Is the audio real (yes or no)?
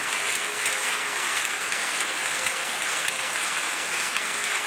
no